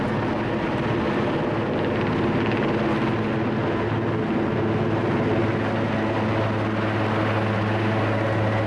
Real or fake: real